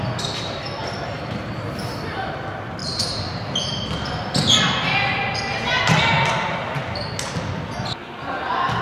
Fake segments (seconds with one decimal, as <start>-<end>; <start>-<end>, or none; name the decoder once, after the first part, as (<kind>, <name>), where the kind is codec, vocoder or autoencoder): 0.8-1.5 (vocoder, BigVGAN v2)